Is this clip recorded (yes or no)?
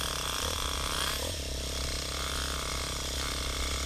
yes